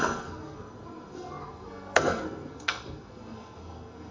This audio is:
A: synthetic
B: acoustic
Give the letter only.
A